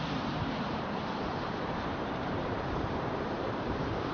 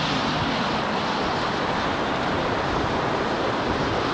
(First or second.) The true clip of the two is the second